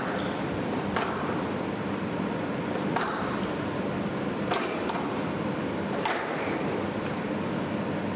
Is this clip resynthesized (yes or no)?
yes